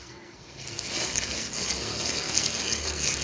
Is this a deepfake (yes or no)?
yes